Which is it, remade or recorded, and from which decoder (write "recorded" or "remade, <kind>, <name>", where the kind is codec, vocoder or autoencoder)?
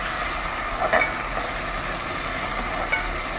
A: recorded